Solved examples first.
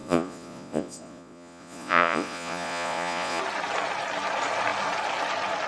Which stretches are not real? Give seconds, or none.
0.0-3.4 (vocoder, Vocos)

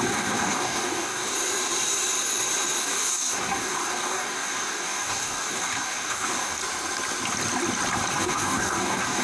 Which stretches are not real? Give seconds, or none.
0.0-1.3 (codec, DAC); 2.8-6.6; 8.1-9.2

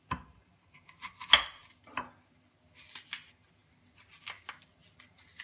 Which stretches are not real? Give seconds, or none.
none

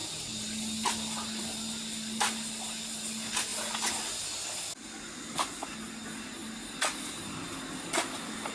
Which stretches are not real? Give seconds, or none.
none